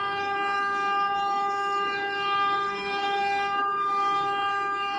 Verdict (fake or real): fake